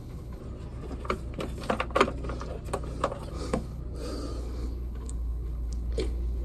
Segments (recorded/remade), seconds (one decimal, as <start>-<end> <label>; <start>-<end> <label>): 0.0-0.4 remade; 0.4-3.3 recorded; 3.3-3.8 remade; 3.8-4.4 recorded; 4.4-6.4 remade